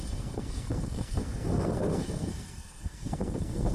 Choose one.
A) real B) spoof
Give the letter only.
B